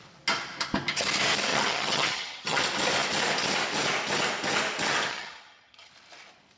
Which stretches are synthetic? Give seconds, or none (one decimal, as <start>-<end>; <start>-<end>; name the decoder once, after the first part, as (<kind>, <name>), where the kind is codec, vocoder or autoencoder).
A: 1.5-2.6 (vocoder, HiFi-GAN); 5.1-5.9